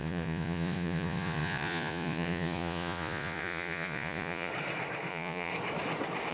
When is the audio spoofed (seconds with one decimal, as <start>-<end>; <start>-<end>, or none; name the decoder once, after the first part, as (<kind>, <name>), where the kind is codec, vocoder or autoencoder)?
0.0-4.5 (vocoder, Vocos); 5.1-5.5